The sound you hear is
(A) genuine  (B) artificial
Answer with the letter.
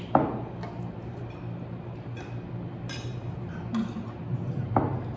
A